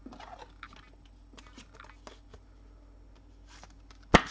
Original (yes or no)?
yes